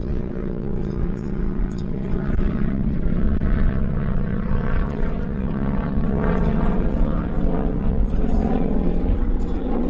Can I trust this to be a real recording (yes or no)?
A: no